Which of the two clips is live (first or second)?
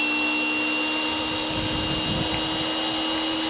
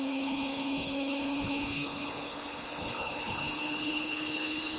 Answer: first